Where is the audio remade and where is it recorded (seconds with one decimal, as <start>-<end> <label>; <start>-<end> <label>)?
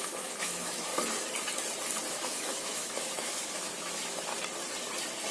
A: 0.0-0.9 remade; 0.9-2.1 recorded; 2.1-4.3 remade; 4.3-5.3 recorded